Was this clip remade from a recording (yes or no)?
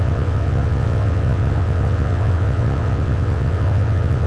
yes